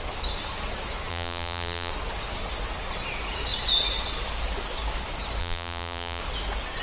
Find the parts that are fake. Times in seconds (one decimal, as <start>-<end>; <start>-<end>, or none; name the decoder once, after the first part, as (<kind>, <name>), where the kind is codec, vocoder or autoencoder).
1.1-1.9 (vocoder, BigVGAN v2); 5.4-6.2